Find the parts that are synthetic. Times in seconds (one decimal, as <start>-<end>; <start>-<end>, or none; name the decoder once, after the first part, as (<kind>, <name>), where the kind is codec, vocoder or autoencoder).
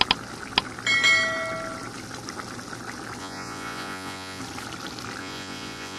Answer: 3.2-4.4 (vocoder, Vocos); 5.2-6.0